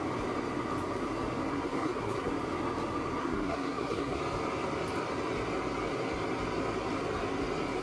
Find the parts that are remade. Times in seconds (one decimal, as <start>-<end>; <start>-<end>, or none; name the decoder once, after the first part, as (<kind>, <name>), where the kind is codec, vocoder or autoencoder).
1.5-2.3 (codec, SNAC); 3.2-4.2